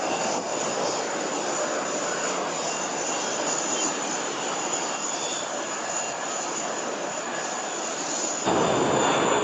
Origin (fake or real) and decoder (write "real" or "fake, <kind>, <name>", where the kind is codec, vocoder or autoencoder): real